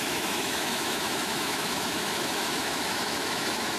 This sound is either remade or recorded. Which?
remade